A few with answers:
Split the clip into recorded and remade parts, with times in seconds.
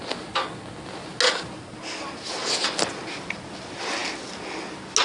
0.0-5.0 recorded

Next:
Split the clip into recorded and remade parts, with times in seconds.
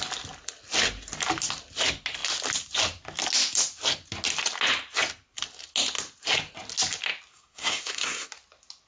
0.0-7.3 recorded; 7.3-8.3 remade; 8.3-8.9 recorded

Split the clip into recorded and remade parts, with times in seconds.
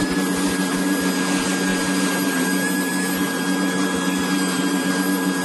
0.0-5.4 recorded